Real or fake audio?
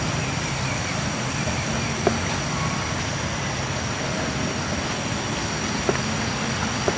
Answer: real